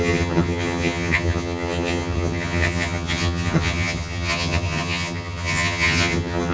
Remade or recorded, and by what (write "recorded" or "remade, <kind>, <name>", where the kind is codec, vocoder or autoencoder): remade, vocoder, HiFi-GAN